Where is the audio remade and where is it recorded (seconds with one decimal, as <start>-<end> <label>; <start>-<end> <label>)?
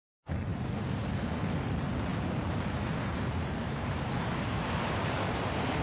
0.0-0.5 recorded; 0.5-1.3 remade; 1.3-2.1 recorded; 2.1-5.8 remade